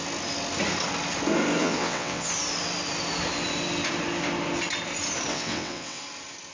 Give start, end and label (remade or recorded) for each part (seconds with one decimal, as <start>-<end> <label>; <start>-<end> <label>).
0.0-1.6 recorded; 1.6-2.3 remade; 2.3-5.3 recorded; 5.3-6.0 remade; 6.0-6.5 recorded